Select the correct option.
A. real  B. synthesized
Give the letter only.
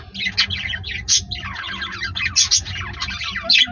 A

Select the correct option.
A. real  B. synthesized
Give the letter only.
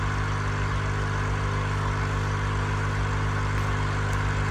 A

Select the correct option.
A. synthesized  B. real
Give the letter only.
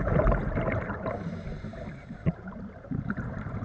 A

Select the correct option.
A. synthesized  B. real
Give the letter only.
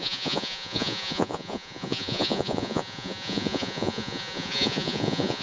A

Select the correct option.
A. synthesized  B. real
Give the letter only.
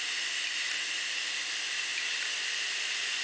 B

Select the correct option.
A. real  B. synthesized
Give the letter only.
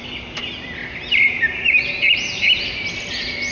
A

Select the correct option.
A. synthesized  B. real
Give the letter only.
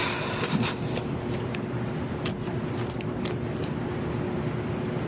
B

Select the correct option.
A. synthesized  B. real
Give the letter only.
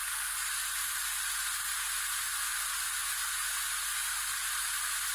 B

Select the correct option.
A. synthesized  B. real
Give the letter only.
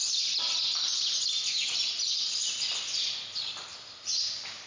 B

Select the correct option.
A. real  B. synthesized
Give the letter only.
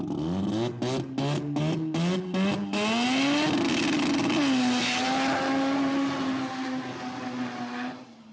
A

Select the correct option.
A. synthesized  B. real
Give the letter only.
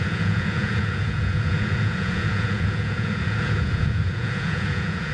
A